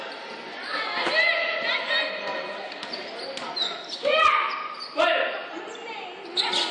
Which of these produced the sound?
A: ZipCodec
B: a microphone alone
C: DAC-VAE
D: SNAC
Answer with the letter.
B